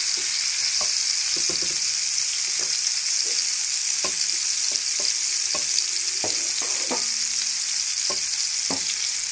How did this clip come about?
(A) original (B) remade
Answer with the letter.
A